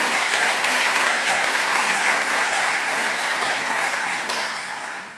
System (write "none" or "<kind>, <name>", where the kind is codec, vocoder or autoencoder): codec, SNAC